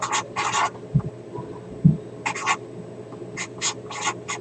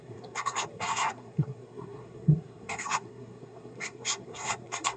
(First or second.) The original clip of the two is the first